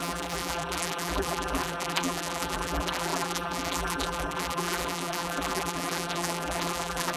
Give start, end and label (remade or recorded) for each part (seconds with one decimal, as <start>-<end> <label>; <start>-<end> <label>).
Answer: 0.0-7.2 remade